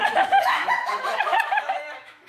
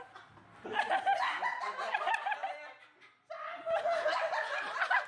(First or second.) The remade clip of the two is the first